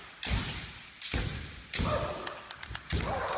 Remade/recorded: recorded